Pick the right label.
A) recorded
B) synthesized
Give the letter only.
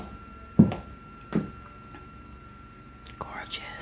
A